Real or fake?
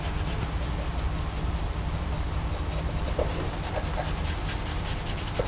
real